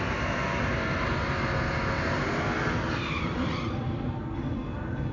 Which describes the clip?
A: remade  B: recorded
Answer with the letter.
B